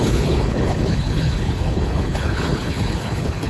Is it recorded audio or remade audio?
remade